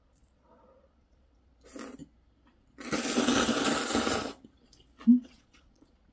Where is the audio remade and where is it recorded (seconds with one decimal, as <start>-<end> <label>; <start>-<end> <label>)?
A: 0.0-1.5 remade; 1.5-5.2 recorded; 5.2-6.1 remade